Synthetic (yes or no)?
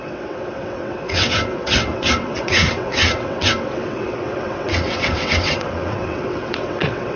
yes